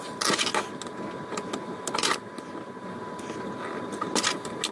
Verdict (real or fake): real